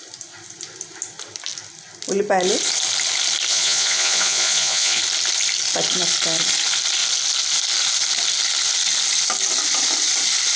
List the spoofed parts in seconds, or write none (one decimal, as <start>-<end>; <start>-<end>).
3.5-5.0